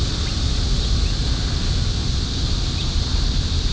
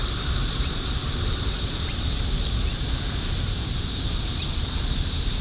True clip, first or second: first